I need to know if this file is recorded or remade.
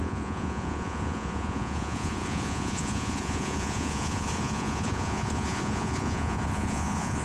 remade